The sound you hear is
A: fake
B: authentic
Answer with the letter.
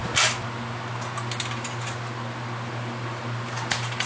B